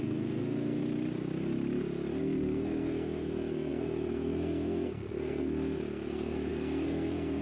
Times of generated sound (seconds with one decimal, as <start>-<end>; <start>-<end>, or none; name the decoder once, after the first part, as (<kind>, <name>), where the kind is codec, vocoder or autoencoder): 0.0-0.8 (codec, SNAC); 2.2-7.4